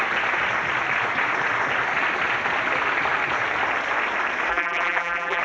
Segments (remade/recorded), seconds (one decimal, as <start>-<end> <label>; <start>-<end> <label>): 0.0-4.5 recorded; 4.5-5.4 remade